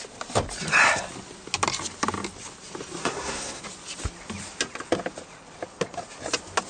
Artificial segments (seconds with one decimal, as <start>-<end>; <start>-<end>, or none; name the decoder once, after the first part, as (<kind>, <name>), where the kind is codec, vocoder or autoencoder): 3.0-3.6 (codec, SNAC)